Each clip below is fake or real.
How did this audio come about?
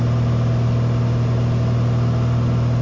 real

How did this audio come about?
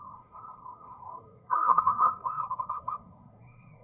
fake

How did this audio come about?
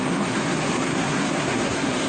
fake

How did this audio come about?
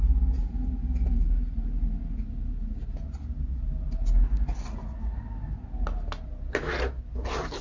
real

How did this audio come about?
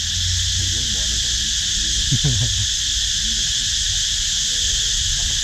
real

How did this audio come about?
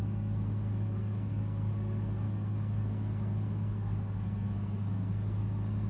fake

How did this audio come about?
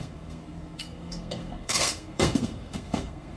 fake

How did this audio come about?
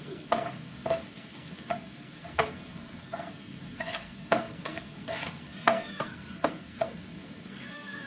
fake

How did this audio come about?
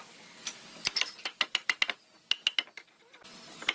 real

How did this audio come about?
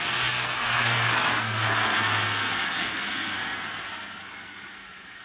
fake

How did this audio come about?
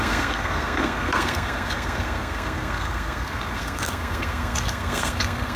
fake